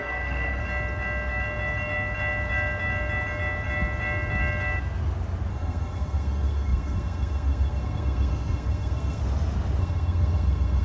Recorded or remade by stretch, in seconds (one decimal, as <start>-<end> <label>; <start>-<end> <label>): 0.0-0.6 remade; 0.6-5.5 recorded; 5.5-9.2 remade; 9.2-9.8 recorded; 9.8-10.8 remade